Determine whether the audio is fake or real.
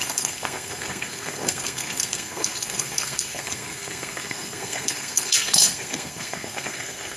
fake